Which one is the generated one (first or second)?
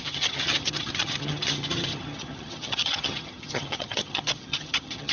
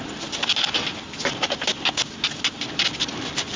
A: first